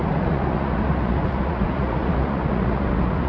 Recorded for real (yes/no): no